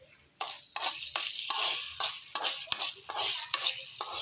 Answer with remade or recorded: recorded